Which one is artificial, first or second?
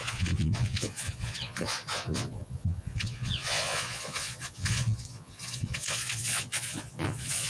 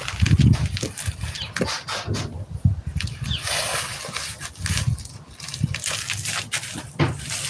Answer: first